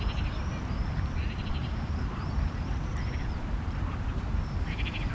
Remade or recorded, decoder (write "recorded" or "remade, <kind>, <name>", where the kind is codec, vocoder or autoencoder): remade, vocoder, BigVGAN v2